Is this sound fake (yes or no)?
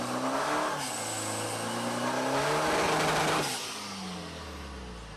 no